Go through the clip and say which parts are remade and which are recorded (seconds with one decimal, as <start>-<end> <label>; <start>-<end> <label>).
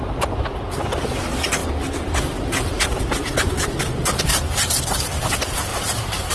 0.0-4.3 recorded; 4.3-5.2 remade; 5.2-5.7 recorded; 5.7-6.3 remade